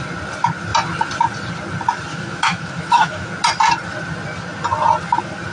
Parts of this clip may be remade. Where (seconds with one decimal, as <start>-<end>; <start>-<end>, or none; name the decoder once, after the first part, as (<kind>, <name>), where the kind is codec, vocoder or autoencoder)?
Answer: 2.1-3.3 (autoencoder, DAC-VAE)

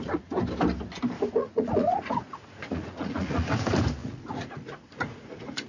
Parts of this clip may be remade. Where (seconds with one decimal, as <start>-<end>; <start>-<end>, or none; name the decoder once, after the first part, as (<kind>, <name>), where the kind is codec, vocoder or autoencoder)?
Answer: 1.4-3.5 (vocoder, Vocos); 4.0-5.7